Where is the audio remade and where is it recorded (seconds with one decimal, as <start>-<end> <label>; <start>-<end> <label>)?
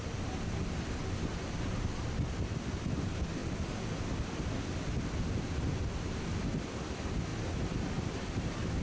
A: 0.0-8.8 recorded